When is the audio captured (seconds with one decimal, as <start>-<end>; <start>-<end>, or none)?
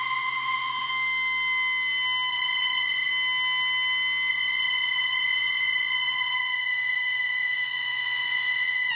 0.9-2.3; 3.1-4.3